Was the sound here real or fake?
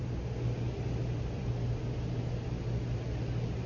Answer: real